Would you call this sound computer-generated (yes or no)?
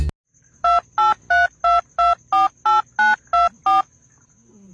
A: no